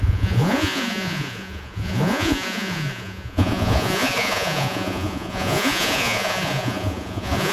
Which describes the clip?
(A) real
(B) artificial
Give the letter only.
B